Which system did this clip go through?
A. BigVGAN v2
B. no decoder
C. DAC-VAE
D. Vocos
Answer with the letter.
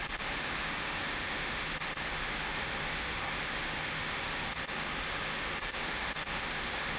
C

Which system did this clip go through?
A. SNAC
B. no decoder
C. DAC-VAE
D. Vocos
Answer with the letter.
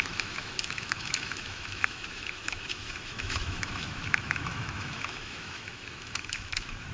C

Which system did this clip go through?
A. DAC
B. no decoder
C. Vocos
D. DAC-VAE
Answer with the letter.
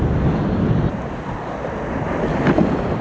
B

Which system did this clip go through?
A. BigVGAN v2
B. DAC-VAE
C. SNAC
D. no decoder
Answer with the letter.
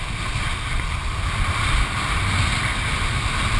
D